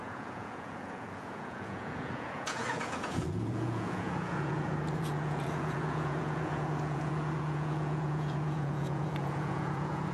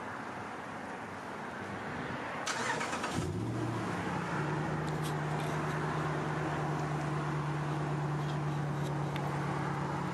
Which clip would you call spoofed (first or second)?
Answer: first